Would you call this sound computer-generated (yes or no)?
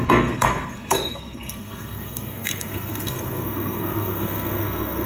yes